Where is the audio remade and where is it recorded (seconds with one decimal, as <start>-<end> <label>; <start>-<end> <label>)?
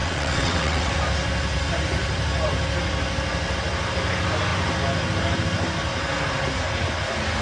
0.0-0.9 remade; 0.9-7.4 recorded